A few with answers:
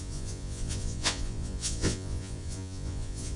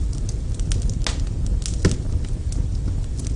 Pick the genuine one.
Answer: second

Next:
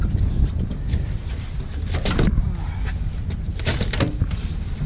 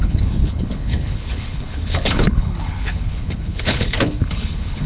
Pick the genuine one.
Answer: first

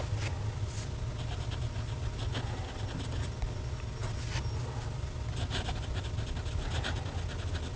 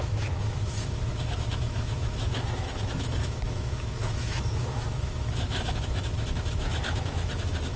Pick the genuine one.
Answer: first